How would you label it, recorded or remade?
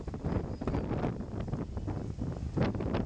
recorded